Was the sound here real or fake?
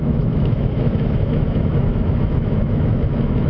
fake